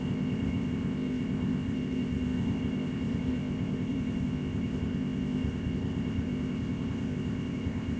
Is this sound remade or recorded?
remade